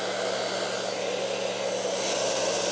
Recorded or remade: recorded